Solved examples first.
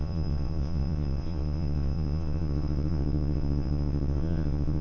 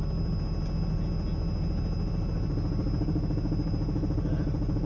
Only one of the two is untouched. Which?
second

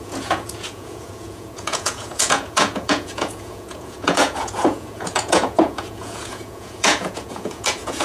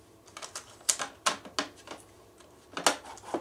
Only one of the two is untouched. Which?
second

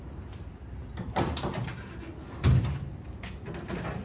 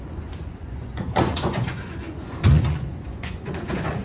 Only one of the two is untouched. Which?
first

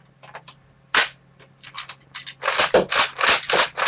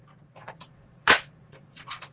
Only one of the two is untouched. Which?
first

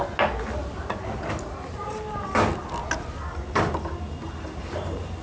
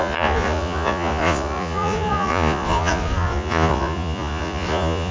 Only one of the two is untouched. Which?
first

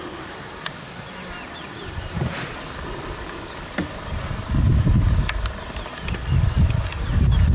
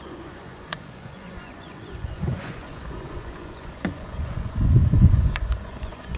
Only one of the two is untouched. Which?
first